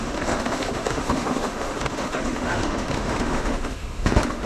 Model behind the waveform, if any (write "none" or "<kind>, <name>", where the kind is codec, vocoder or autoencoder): autoencoder, DAC-VAE